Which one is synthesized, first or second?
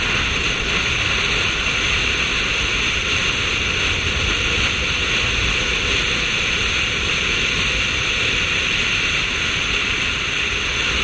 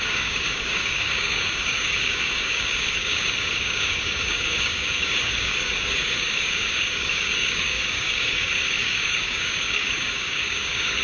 second